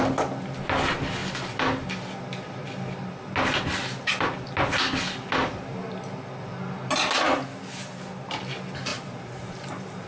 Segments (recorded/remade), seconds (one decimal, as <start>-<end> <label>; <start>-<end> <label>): 0.0-8.9 recorded; 8.9-9.5 remade; 9.5-10.1 recorded